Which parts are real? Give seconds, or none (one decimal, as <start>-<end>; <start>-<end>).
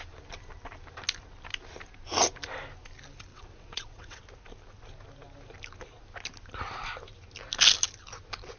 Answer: 0.0-3.3; 4.2-8.6